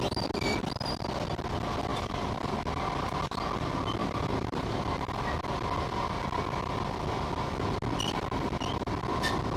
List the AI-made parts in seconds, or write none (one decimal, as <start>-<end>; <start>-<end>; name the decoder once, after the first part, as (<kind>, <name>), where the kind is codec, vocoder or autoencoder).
1.9-2.5 (vocoder, BigVGAN v2); 4.0-4.8